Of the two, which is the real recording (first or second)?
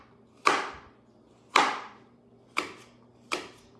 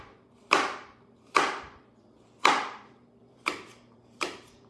first